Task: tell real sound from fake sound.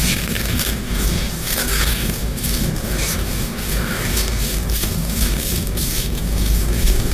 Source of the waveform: fake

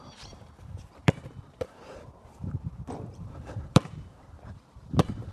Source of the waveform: fake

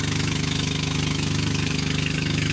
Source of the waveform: fake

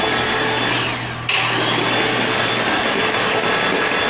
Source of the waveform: real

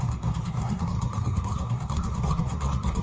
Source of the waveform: fake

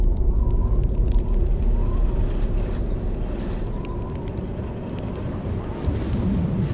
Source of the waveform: real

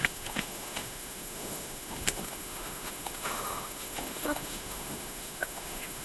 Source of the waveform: fake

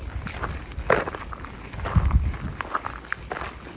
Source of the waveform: real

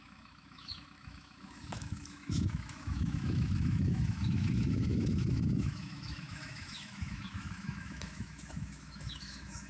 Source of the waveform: fake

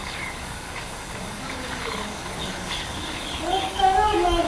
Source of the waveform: fake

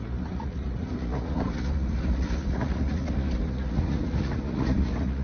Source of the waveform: fake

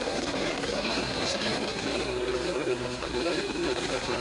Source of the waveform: fake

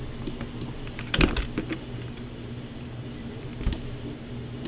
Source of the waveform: real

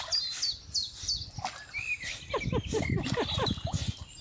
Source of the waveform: real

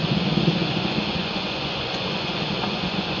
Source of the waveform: fake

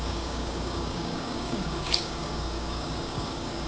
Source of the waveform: fake